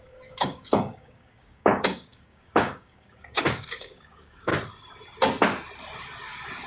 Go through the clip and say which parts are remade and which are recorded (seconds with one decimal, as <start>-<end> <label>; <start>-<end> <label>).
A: 0.0-4.5 remade; 4.5-6.7 recorded